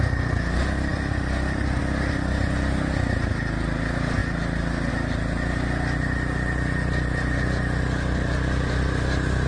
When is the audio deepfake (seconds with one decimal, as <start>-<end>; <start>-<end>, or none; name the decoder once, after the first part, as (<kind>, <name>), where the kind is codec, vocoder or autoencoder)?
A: none